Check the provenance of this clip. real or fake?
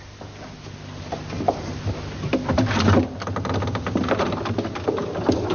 real